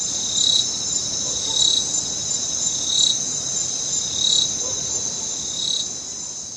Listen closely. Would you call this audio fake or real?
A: real